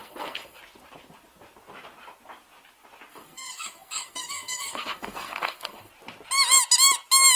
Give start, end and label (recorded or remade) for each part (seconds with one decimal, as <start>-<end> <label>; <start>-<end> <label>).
0.0-0.6 remade; 0.6-3.1 recorded; 3.1-5.9 remade; 5.9-7.4 recorded